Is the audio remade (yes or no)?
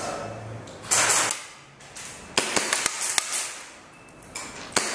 no